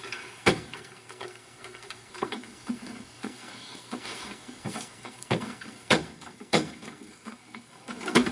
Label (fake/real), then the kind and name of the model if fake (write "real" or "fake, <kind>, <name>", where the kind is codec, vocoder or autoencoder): fake, codec, SNAC